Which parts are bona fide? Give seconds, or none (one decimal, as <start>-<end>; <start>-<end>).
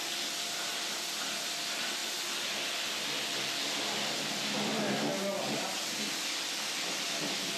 0.0-7.6